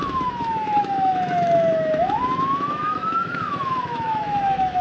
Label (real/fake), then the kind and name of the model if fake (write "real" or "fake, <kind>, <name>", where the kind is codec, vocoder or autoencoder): fake, autoencoder, DAC-VAE